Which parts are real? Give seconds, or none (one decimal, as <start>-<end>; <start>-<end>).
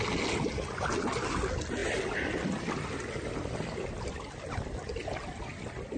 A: 0.0-6.0